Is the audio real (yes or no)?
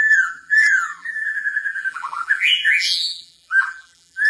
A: no